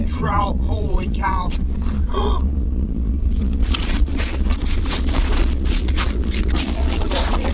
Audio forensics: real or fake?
fake